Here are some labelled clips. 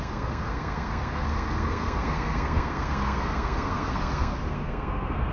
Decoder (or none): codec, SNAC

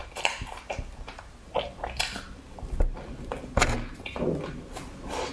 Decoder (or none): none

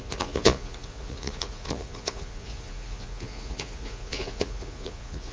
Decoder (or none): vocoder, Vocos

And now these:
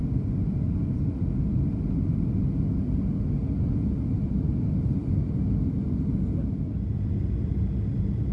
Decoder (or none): none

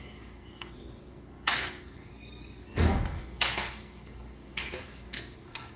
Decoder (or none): codec, SNAC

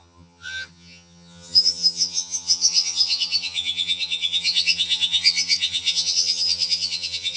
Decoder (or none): vocoder, HiFi-GAN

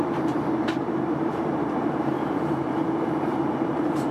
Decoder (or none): vocoder, BigVGAN v2